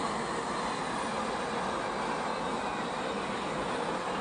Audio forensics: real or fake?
real